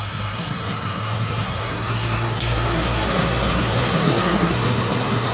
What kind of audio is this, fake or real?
fake